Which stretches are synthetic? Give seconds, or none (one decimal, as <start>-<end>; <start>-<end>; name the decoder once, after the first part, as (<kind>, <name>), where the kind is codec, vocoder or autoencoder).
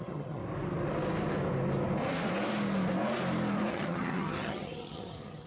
0.0-0.4 (vocoder, HiFi-GAN); 3.7-5.5